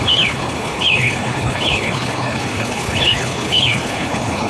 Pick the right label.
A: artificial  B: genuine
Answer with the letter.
A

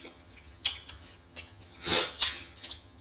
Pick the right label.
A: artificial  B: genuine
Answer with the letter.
A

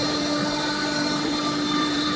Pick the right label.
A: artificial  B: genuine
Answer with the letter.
A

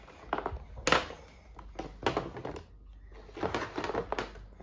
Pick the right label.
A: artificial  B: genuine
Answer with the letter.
B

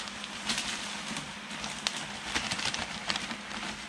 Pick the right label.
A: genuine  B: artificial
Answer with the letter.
A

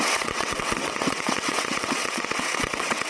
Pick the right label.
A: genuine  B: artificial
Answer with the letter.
B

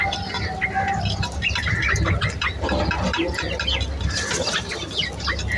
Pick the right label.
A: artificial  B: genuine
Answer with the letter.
B